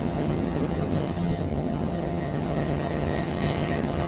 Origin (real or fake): fake